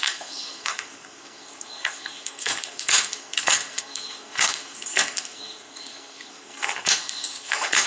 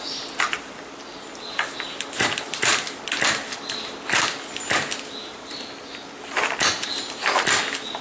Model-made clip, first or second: first